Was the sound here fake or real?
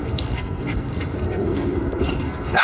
fake